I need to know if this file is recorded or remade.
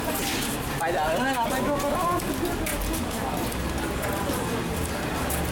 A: recorded